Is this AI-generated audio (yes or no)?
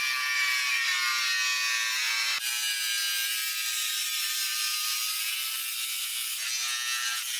no